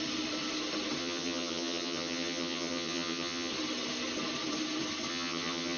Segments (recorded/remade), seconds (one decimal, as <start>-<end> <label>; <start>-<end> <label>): 0.0-1.0 recorded; 1.0-3.5 remade; 3.5-5.1 recorded; 5.1-5.8 remade